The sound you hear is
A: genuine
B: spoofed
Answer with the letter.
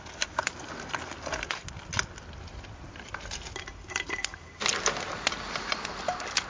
A